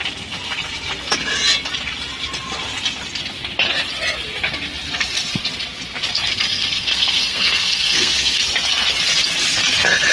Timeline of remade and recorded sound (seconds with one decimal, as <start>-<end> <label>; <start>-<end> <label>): 0.0-6.3 recorded; 6.3-8.4 remade; 8.4-10.1 recorded